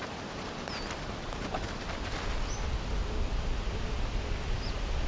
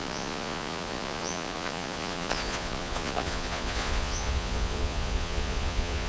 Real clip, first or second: first